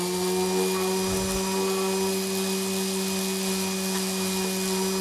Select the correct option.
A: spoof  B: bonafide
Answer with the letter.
B